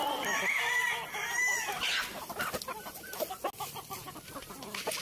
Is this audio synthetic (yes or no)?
no